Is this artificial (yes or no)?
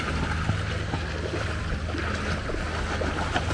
no